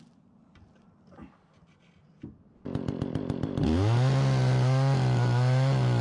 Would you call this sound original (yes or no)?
yes